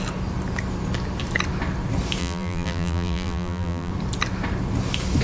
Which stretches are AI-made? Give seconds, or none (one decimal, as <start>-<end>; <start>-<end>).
2.2-3.9

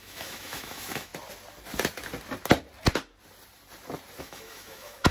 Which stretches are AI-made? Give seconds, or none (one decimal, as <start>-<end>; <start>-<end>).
0.0-1.1; 4.2-5.1

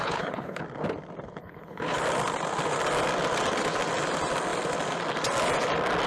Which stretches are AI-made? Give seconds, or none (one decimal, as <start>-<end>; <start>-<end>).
0.0-0.6; 1.4-2.0

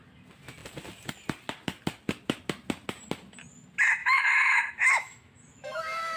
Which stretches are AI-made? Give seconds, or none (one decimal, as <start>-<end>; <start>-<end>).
4.0-6.2